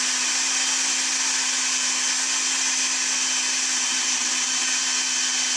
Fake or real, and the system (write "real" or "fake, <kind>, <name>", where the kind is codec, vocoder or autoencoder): real